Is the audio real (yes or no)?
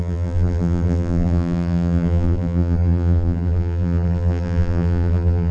no